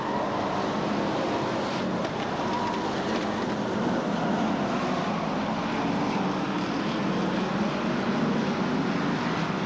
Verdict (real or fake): real